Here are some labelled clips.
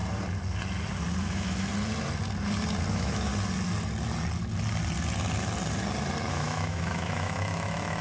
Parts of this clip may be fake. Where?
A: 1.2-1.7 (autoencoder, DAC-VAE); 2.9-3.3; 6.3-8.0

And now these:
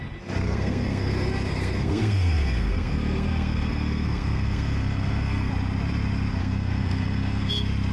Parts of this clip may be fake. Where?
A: 0.4-1.1 (codec, SNAC); 1.5-5.5; 6.4-7.5

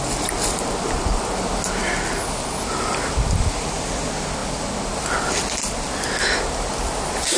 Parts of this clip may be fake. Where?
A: none

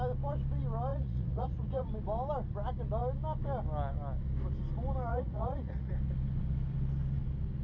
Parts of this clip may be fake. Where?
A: 0.9-1.9 (vocoder, Vocos); 5.1-5.9

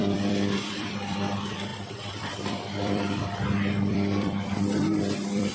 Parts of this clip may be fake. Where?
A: 0.0-5.5 (vocoder, BigVGAN v2)